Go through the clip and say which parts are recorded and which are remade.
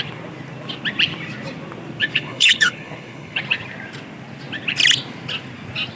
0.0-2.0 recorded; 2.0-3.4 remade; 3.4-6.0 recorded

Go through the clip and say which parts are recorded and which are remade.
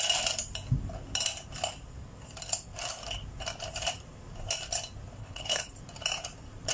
0.0-5.2 recorded; 5.2-5.7 remade; 5.7-6.7 recorded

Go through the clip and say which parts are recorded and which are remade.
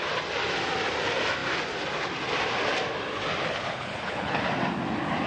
0.0-3.4 recorded; 3.4-4.4 remade; 4.4-5.3 recorded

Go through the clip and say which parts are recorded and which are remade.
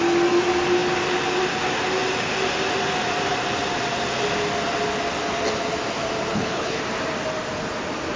0.0-6.3 recorded; 6.3-6.8 remade; 6.8-8.2 recorded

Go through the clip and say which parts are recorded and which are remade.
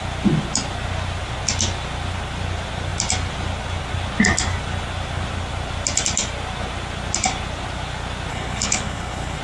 0.0-8.3 recorded; 8.3-9.4 remade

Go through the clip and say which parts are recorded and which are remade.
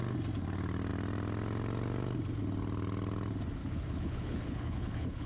0.0-3.6 recorded; 3.6-5.3 remade